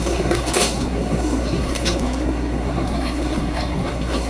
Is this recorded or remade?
remade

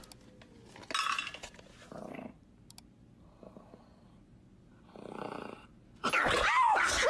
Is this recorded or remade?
recorded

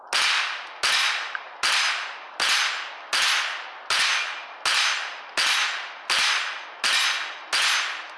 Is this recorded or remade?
recorded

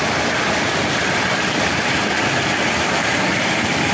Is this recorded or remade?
recorded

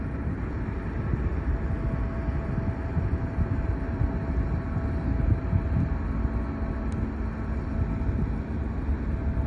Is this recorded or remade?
recorded